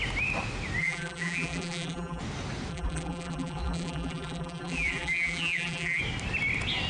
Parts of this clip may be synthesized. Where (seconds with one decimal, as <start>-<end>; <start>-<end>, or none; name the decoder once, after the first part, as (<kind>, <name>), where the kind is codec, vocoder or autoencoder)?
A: 0.8-2.2 (vocoder, BigVGAN v2); 2.7-6.0